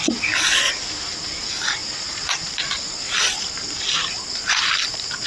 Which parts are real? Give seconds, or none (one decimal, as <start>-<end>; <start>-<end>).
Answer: 0.0-5.3

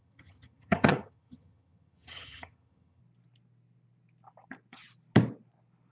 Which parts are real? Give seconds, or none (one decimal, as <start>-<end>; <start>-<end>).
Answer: 3.0-5.9

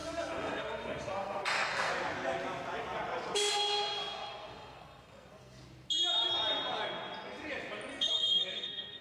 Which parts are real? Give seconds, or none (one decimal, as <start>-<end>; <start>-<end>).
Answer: 1.9-4.3; 5.6-7.9

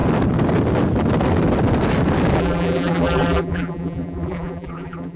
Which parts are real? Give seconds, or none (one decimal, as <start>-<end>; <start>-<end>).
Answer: 0.0-2.4

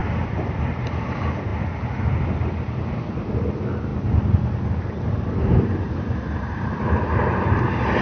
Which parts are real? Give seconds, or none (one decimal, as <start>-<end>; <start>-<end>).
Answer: 1.5-3.2; 3.9-5.6

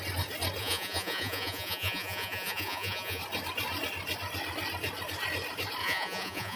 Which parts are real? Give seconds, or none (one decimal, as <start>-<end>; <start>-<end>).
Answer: 0.0-0.6; 3.2-5.8

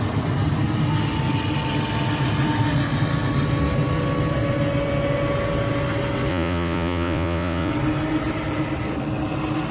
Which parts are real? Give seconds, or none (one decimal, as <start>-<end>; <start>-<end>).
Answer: 0.0-6.3; 7.7-9.7